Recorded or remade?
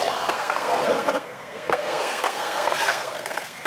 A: remade